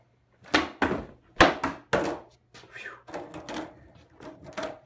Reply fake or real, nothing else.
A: real